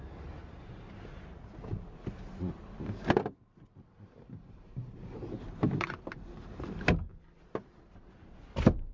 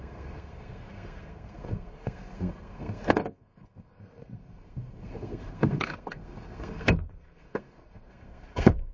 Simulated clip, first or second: second